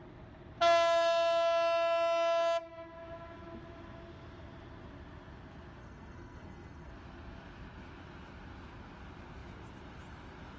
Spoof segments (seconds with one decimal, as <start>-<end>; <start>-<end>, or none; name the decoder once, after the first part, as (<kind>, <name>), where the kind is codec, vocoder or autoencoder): 5.8-6.9 (codec, SNAC)